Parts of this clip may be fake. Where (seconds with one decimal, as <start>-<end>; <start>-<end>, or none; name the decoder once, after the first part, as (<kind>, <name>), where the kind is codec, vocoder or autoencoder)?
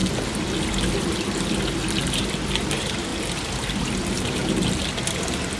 0.0-4.4 (vocoder, BigVGAN v2)